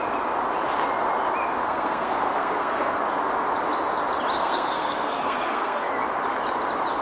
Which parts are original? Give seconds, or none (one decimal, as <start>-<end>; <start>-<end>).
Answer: 0.0-1.6; 3.0-4.3; 5.9-7.0